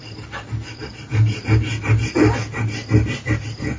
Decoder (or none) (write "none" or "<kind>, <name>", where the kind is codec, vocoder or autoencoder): none